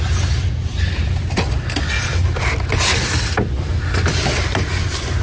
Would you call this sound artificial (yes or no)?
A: no